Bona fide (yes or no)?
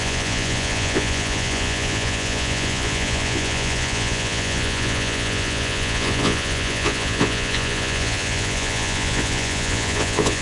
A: no